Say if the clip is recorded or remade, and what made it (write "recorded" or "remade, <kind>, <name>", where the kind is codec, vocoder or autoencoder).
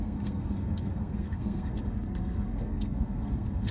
remade, codec, SNAC